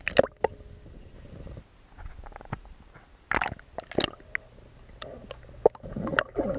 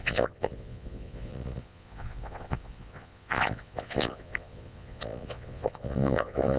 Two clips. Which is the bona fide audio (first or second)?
first